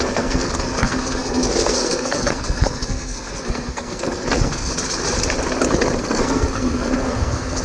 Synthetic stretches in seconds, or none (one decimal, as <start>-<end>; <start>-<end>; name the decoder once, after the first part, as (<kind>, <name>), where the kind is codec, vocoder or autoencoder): 0.0-4.7 (codec, SNAC); 6.0-7.6